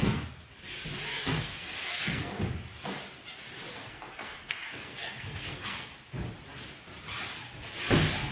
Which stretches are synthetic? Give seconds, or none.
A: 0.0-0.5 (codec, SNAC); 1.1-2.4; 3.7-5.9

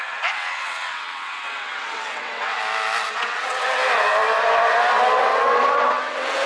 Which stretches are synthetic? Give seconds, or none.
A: 0.0-2.6 (vocoder, WaveNeXt); 3.1-3.8; 5.2-6.5

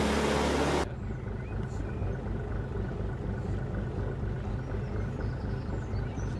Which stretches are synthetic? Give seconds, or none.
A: none

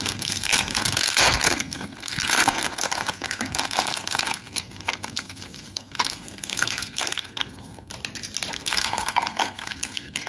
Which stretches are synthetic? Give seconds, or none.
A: 0.0-7.9 (codec, SNAC); 8.5-10.3

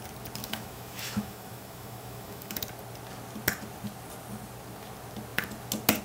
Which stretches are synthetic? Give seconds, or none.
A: 0.4-2.6 (autoencoder, DAC-VAE)